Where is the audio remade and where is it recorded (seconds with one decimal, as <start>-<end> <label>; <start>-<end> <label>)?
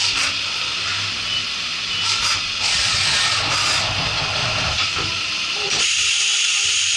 0.0-4.4 recorded; 4.4-6.1 remade; 6.1-7.0 recorded